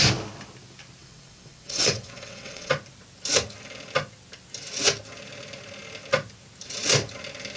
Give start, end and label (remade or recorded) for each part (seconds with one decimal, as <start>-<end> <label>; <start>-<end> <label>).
0.0-1.0 recorded; 1.0-2.7 remade; 2.7-7.6 recorded